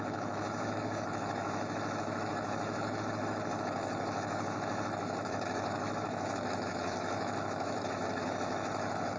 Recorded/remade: remade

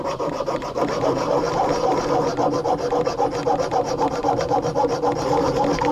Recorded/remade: recorded